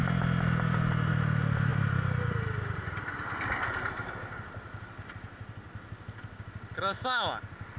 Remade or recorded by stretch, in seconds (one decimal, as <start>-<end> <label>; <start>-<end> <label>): 0.0-7.8 recorded